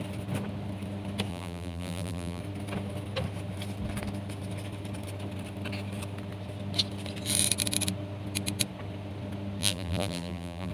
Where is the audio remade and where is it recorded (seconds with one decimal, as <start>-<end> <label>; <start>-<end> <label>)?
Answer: 0.0-1.3 recorded; 1.3-2.4 remade; 2.4-9.6 recorded; 9.6-10.7 remade